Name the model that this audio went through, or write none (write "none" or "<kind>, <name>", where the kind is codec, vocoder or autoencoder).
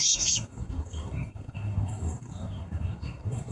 codec, SNAC